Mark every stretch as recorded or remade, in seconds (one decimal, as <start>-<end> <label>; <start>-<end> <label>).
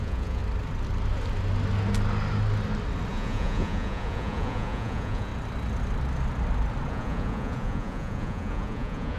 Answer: 0.0-0.4 remade; 0.4-3.1 recorded; 3.1-5.3 remade; 5.3-6.9 recorded; 6.9-9.2 remade